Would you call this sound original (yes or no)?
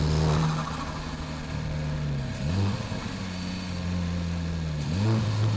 yes